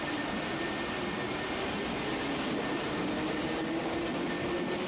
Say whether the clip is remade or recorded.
recorded